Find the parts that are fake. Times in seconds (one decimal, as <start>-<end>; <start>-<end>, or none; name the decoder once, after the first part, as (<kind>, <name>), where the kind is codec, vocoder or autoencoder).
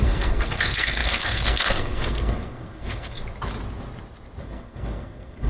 0.0-3.2 (codec, SNAC); 4.4-5.5